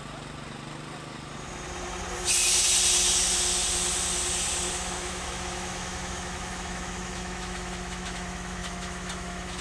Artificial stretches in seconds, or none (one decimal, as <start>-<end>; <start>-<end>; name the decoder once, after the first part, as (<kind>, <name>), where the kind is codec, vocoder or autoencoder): 4.7-9.6 (autoencoder, DAC-VAE)